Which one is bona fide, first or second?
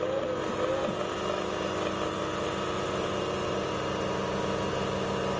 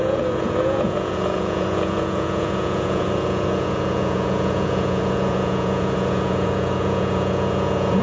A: first